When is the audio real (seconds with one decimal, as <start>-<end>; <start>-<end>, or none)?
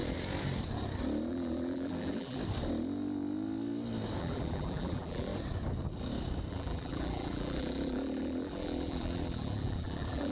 0.0-1.3; 2.4-4.2; 5.3-6.5